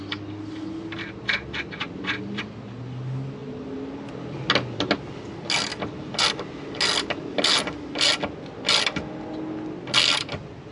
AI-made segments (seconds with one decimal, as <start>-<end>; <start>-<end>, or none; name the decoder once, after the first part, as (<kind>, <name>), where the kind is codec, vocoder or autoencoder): none